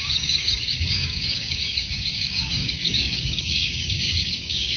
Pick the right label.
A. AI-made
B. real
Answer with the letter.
A